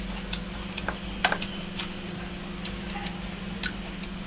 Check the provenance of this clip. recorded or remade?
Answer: recorded